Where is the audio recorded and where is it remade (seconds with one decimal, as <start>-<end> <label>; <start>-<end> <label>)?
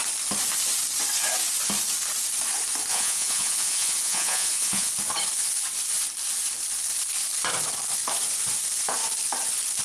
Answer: 0.0-2.9 recorded; 2.9-4.9 remade; 4.9-9.8 recorded